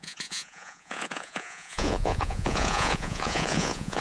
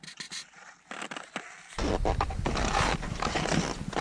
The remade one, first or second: first